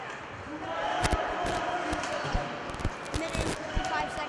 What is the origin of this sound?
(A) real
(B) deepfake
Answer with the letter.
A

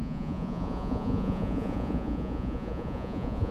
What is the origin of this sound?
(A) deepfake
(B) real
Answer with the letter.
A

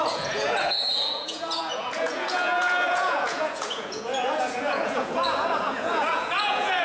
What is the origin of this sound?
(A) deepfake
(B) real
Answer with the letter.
A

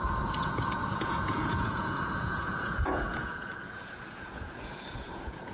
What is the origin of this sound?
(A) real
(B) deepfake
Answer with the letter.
B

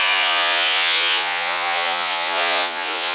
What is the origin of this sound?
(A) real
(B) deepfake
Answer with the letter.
B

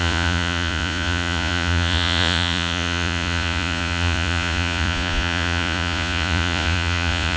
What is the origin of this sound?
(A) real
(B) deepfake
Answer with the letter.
B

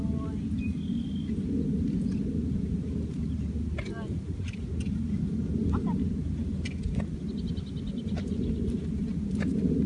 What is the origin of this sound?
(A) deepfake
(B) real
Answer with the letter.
B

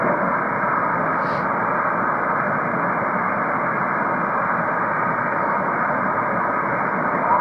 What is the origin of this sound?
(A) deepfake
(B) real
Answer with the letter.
B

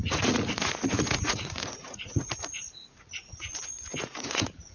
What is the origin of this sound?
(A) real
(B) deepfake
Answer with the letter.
B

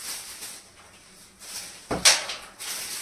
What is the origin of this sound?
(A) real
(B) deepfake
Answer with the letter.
A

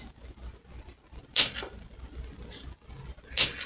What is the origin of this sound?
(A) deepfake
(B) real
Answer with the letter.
B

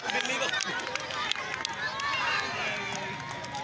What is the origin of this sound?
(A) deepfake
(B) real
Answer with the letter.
B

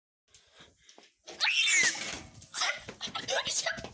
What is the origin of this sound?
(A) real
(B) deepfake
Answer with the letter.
A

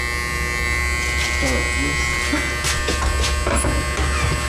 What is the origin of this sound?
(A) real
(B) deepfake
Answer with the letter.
A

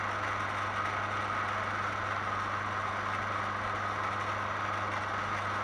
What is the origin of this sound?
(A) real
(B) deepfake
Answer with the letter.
A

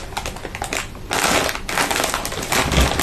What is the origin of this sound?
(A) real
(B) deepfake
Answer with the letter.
A